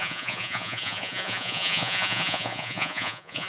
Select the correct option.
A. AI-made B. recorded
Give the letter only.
A